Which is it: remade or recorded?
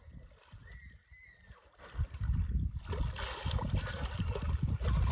recorded